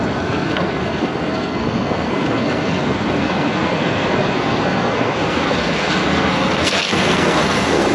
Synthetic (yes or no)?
yes